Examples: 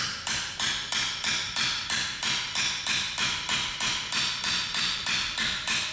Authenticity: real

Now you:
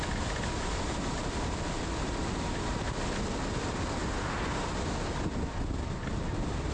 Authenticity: real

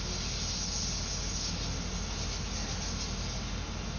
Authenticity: real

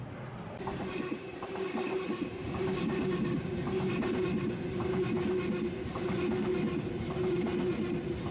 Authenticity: real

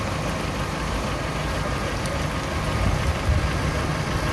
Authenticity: real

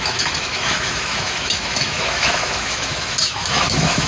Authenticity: fake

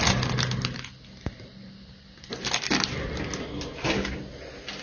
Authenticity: real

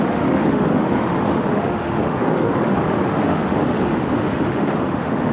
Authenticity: fake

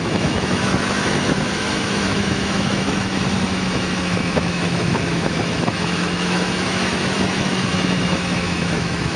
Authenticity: fake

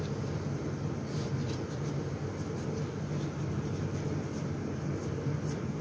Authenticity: real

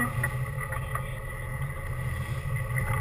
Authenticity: real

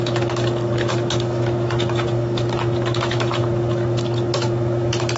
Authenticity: fake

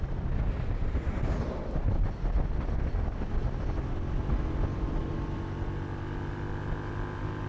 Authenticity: real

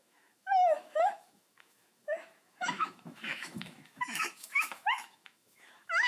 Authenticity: fake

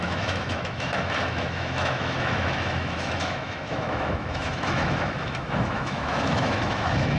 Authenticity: fake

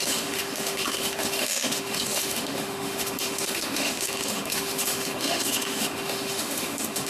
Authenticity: fake